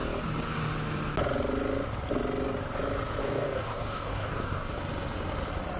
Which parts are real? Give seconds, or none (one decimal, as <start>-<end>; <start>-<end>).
0.0-3.2; 4.8-5.8